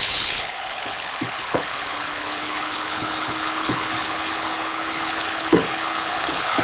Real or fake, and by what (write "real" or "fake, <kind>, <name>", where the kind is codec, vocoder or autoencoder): fake, codec, HILCodec